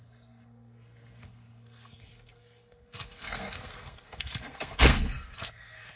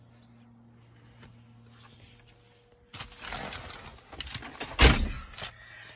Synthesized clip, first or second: first